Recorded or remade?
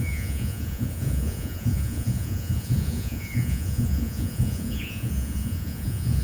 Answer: remade